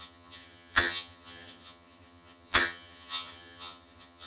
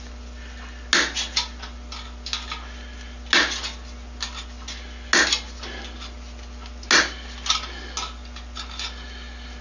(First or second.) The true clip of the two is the second